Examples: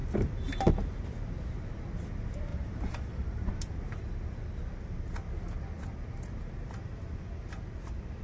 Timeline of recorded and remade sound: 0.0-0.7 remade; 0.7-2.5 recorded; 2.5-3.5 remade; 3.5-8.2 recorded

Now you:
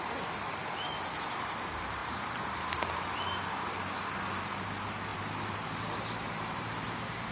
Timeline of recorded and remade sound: 0.0-2.0 recorded; 2.0-3.2 remade; 3.2-5.1 recorded; 5.1-6.6 remade; 6.6-7.3 recorded